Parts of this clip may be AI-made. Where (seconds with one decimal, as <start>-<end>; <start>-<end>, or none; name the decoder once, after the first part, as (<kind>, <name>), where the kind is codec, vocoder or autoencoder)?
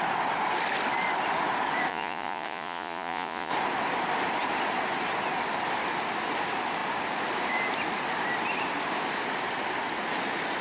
1.9-3.5 (vocoder, Vocos)